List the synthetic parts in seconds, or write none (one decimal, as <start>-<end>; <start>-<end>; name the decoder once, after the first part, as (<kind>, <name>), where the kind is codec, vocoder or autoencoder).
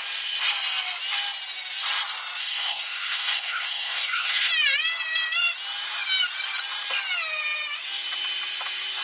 2.4-4.5 (codec, SNAC)